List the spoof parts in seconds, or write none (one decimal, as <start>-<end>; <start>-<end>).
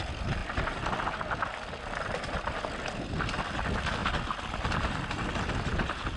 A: none